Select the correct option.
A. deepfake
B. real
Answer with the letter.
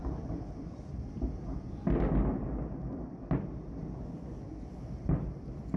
B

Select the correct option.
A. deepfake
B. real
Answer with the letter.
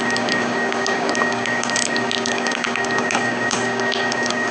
A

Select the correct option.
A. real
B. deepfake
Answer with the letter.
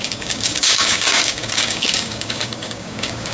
B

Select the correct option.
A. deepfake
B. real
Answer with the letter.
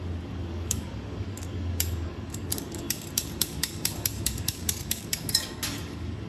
A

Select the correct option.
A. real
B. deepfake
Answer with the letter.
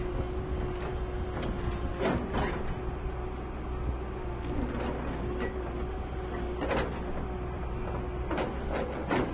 A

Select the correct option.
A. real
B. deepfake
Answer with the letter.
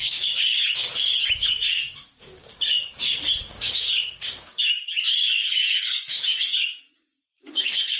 B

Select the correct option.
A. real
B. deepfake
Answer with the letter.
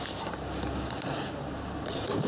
A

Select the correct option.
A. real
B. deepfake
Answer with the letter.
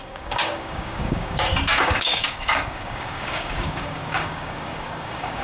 B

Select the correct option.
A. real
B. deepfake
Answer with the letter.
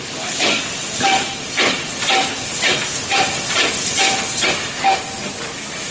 A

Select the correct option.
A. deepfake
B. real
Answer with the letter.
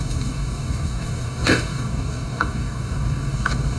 A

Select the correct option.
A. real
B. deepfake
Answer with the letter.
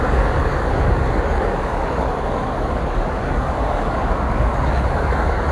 B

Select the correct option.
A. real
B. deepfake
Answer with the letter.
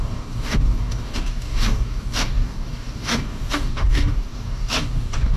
B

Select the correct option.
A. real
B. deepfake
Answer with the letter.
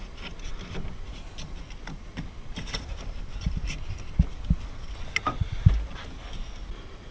A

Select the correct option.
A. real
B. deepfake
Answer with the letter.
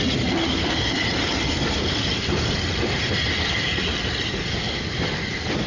A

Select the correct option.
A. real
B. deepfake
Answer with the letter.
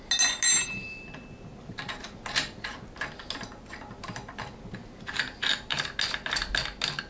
A